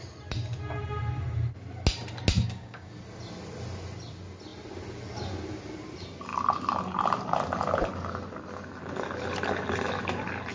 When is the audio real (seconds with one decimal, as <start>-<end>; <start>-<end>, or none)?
0.0-2.3; 2.9-10.5